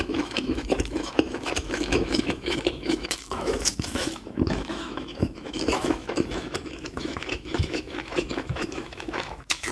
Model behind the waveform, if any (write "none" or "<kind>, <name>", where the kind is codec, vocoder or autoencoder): autoencoder, DAC-VAE